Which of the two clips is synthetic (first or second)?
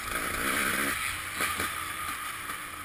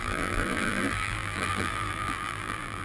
second